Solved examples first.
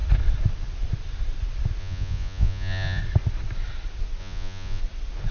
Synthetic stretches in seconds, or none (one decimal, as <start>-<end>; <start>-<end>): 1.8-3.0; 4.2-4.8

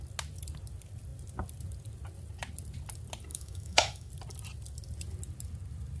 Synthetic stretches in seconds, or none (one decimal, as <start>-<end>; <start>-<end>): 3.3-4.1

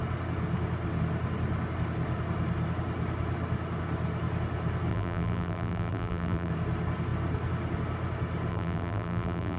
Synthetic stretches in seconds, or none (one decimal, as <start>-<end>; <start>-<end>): 4.9-6.5; 8.5-9.6